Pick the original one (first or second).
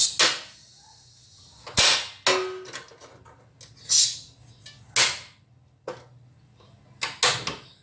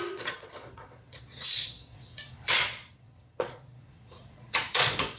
first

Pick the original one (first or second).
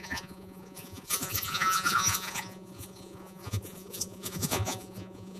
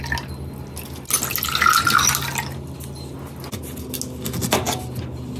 second